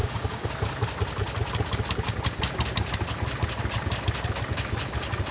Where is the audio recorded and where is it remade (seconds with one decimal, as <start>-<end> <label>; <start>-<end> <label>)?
0.0-0.5 remade; 0.5-5.3 recorded